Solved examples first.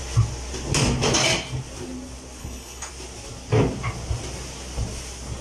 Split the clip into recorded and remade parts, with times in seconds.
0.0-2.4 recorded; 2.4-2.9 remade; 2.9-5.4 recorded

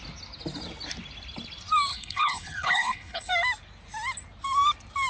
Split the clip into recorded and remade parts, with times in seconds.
0.0-1.9 recorded; 1.9-3.3 remade; 3.3-5.1 recorded

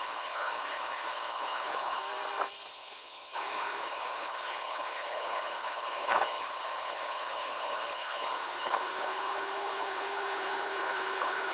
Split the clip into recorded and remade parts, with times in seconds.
0.0-2.0 remade; 2.0-2.7 recorded; 2.7-11.5 remade

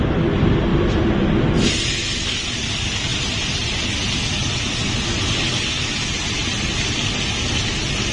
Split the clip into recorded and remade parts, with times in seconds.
0.0-8.1 recorded